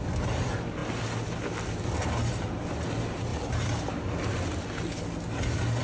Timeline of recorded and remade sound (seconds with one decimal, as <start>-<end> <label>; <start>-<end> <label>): 0.0-3.3 recorded; 3.3-3.8 remade; 3.8-5.8 recorded